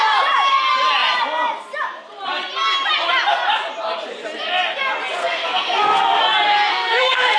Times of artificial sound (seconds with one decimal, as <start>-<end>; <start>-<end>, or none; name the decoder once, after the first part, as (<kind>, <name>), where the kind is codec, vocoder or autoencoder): 5.2-6.2 (codec, SNAC); 6.7-7.4